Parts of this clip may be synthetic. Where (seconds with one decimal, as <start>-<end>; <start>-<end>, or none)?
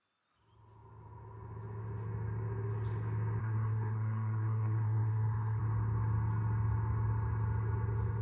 3.4-5.6